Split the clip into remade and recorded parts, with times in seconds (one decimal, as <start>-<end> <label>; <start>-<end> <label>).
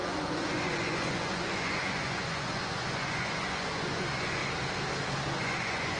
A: 0.0-4.4 remade; 4.4-5.4 recorded; 5.4-6.0 remade